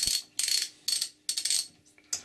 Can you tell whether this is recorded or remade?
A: recorded